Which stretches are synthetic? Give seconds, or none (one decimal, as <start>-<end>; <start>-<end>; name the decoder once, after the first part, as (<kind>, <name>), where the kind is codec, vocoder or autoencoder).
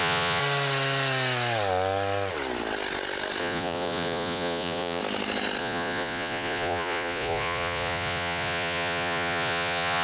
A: 0.0-0.4 (vocoder, Vocos); 3.4-5.0; 5.6-10.0